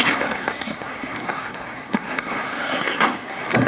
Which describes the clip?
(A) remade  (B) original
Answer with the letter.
A